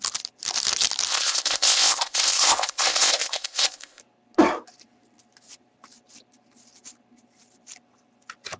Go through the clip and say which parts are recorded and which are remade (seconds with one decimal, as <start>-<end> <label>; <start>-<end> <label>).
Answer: 0.0-1.1 recorded; 1.1-4.0 remade; 4.0-8.6 recorded